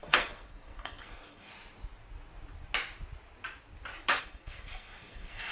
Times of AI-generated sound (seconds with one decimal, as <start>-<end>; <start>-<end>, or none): 0.0-1.5; 4.2-5.5